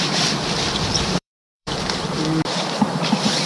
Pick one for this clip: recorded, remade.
remade